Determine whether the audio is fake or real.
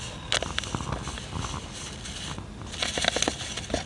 real